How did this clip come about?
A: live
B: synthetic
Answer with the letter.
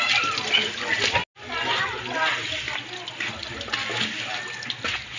A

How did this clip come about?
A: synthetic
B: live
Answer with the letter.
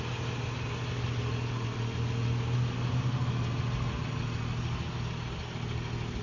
B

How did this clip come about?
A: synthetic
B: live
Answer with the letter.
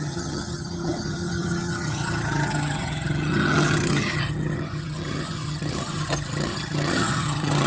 A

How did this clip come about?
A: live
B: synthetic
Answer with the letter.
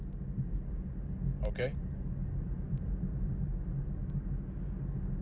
A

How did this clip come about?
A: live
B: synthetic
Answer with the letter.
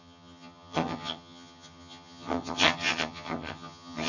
B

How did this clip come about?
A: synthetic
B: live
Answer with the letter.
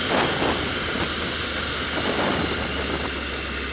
B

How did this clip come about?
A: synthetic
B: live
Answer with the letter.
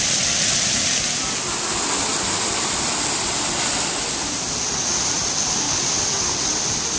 B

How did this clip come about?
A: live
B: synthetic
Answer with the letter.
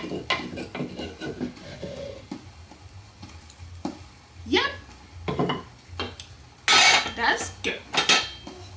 A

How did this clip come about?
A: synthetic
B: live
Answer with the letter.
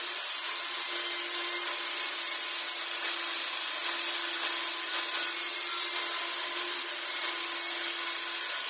B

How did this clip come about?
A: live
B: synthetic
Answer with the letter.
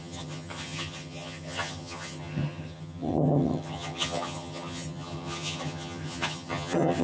B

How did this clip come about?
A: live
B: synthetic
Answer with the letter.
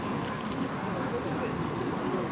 A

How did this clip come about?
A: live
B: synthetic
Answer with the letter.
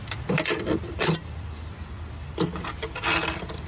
A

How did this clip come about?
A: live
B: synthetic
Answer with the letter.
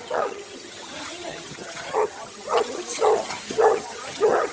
B